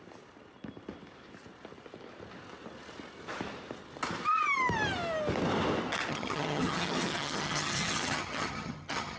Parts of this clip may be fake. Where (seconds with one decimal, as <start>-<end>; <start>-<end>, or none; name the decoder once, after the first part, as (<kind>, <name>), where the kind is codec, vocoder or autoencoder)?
6.1-9.2 (vocoder, HiFi-GAN)